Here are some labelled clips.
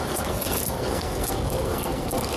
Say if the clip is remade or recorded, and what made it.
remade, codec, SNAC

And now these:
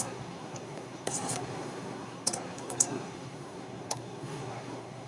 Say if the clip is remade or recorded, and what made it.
remade, codec, SNAC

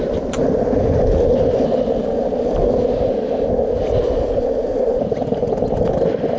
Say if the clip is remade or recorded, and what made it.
recorded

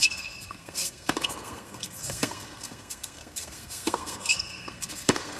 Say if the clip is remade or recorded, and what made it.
remade, codec, SNAC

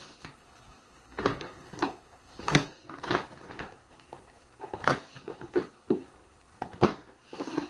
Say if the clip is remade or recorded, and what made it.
remade, codec, SNAC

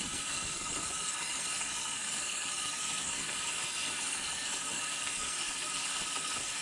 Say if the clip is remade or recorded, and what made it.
remade, codec, SNAC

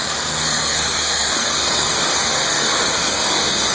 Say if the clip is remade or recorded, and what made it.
remade, codec, SNAC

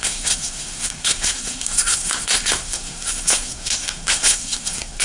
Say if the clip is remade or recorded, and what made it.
remade, codec, SNAC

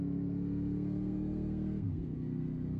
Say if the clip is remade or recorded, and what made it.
remade, codec, SNAC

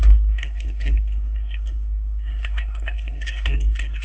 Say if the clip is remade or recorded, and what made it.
remade, codec, SNAC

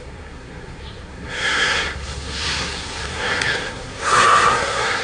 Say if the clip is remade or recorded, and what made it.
remade, codec, SNAC